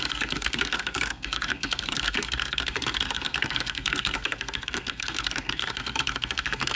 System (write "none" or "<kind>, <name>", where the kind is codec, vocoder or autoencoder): codec, SNAC